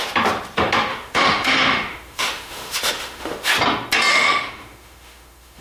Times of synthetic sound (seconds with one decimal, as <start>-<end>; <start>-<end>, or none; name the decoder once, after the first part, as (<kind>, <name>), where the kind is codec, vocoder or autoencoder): 0.9-3.5 (autoencoder, DAC-VAE); 4.1-5.6